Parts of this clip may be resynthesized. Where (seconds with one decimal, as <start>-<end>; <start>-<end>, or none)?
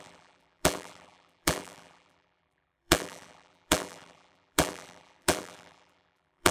0.0-6.5